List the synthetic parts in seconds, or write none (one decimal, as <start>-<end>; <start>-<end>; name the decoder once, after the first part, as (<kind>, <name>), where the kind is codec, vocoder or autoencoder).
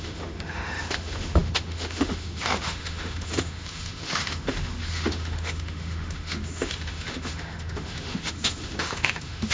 0.0-9.5 (autoencoder, DAC-VAE)